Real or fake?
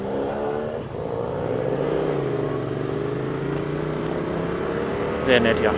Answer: real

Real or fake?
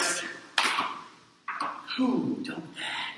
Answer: real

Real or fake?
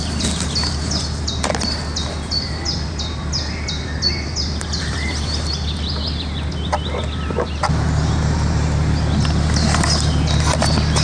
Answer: real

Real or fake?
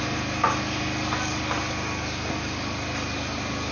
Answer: real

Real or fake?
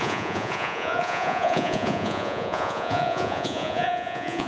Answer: fake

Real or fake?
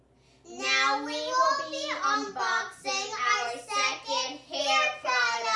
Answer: real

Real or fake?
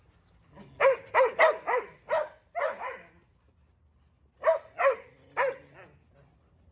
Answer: real